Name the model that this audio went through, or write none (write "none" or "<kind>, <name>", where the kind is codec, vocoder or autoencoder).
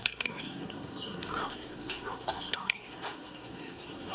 codec, SNAC